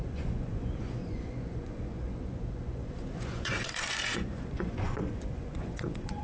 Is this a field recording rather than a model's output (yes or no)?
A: no